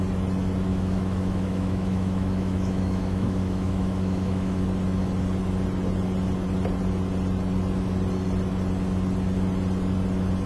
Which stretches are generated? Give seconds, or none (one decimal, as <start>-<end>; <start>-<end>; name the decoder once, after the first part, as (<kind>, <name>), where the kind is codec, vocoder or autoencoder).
0.7-4.6 (autoencoder, DAC-VAE)